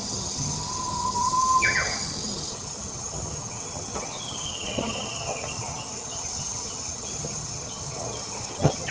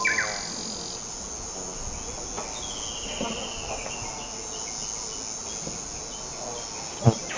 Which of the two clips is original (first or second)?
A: second